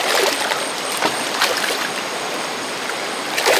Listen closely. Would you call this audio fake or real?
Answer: fake